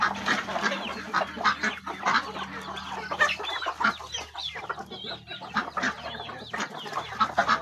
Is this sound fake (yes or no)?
no